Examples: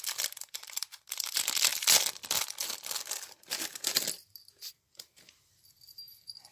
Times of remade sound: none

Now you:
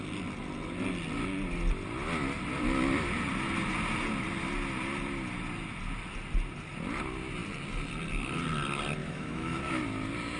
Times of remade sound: 9.0-9.8